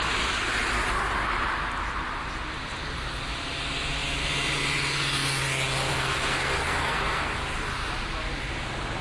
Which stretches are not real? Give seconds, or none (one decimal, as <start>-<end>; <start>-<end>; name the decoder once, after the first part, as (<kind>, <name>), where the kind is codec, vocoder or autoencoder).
5.9-7.3 (codec, SNAC)